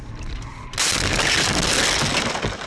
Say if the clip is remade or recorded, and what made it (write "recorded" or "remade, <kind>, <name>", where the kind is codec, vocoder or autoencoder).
recorded